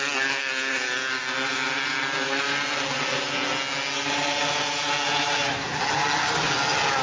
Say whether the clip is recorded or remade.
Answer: recorded